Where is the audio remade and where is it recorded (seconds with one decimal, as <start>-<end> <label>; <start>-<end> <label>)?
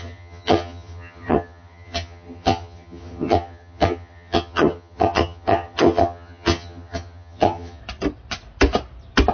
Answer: 0.0-7.8 remade; 7.8-9.3 recorded